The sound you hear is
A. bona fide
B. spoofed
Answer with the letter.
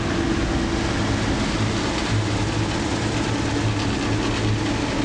A